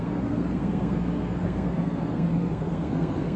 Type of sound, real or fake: fake